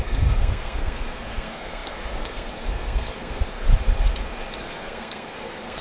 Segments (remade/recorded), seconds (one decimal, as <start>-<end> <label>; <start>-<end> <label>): 0.0-3.7 remade; 3.7-4.6 recorded; 4.6-5.8 remade